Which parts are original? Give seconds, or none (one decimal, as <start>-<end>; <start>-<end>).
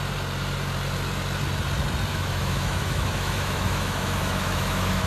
0.0-2.1